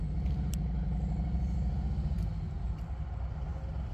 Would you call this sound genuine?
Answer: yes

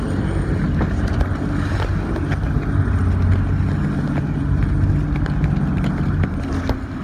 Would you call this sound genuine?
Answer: yes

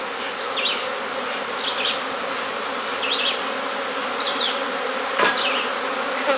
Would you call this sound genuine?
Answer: yes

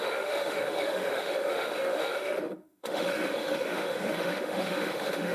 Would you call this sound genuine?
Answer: no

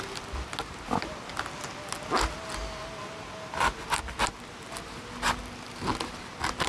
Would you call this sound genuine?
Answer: yes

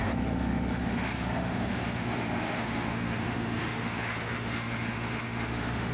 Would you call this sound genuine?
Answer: no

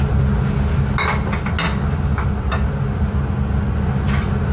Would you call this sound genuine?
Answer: yes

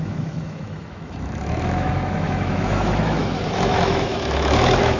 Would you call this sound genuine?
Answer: no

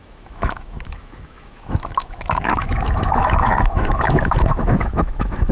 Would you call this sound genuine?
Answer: no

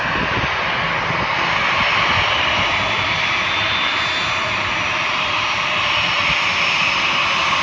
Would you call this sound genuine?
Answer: yes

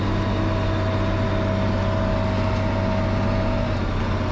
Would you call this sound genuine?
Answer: yes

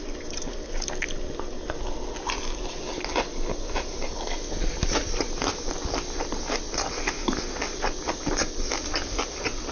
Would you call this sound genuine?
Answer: yes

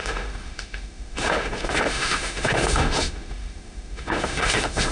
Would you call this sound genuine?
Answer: no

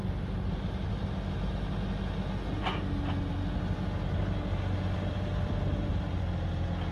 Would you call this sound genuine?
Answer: yes